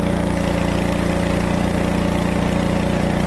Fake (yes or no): no